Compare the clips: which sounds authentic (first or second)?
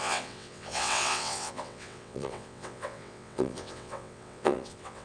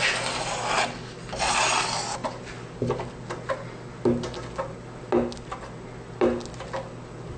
second